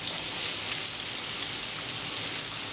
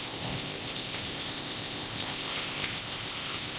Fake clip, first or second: second